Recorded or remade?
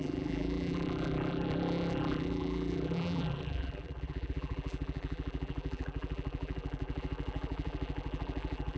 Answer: remade